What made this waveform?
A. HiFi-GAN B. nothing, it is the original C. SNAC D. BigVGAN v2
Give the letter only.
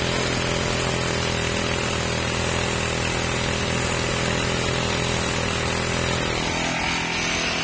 B